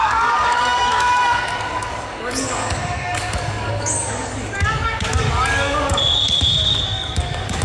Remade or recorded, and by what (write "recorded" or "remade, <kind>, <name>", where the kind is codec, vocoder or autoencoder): remade, codec, DAC